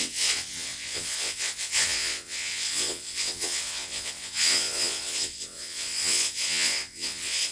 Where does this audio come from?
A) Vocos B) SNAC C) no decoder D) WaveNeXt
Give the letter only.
D